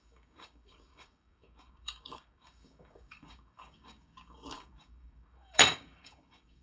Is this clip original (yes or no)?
no